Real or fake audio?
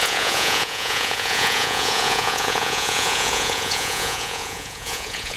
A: fake